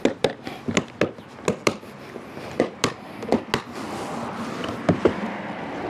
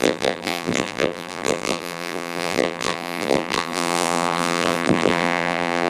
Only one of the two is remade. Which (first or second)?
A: second